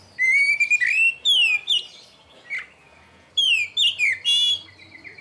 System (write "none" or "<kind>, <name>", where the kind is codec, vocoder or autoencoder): none